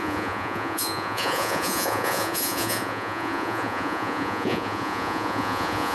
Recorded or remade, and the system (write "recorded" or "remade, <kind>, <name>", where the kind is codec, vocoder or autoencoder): remade, vocoder, Vocos